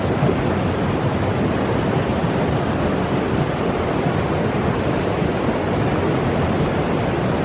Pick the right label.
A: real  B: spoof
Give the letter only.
A